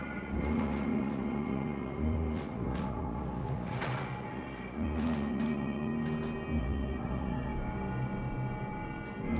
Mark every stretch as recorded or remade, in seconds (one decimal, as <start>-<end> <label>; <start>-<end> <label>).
0.0-5.9 remade; 5.9-6.6 recorded; 6.6-7.5 remade; 7.5-9.4 recorded